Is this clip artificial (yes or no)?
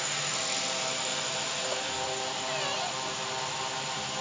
no